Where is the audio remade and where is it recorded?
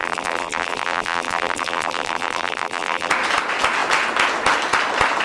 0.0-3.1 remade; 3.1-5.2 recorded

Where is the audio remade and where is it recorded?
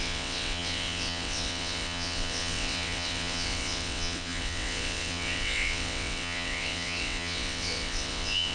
0.0-8.5 remade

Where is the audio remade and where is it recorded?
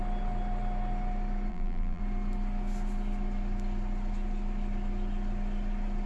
0.0-1.5 recorded; 1.5-2.0 remade; 2.0-6.1 recorded